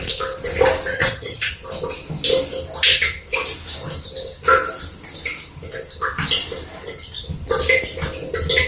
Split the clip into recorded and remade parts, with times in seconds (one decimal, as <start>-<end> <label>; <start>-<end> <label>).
0.0-0.9 recorded; 0.9-1.5 remade; 1.5-8.7 recorded